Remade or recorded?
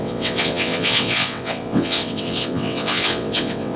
remade